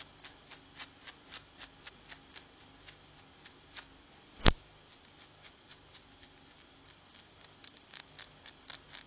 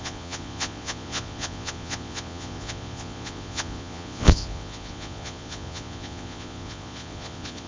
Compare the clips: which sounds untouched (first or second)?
first